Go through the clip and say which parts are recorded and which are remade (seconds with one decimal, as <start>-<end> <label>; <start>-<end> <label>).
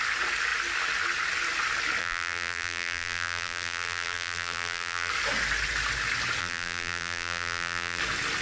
0.0-2.0 recorded; 2.0-5.1 remade; 5.1-6.4 recorded; 6.4-8.0 remade; 8.0-8.4 recorded